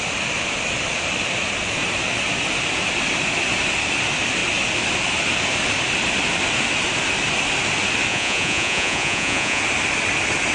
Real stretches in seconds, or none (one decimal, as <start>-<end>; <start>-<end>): 0.0-8.1; 9.6-10.5